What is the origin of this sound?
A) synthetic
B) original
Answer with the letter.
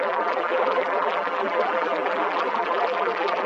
A